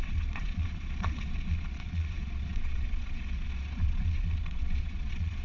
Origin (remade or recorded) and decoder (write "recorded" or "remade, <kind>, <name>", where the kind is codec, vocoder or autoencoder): remade, vocoder, Vocos